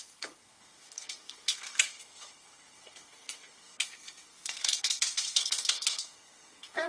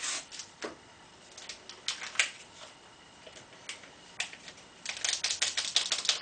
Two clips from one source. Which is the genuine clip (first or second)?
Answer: second